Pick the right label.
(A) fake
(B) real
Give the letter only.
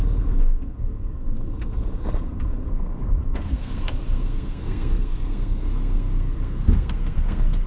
A